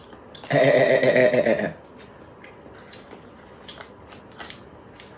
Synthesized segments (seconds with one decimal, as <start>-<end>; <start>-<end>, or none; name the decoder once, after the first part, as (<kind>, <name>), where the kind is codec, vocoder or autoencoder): none